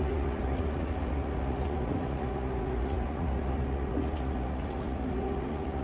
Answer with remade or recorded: remade